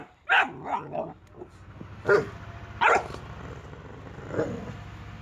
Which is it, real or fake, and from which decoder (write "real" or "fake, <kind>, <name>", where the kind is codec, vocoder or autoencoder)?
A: real